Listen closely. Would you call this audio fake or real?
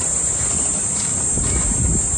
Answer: real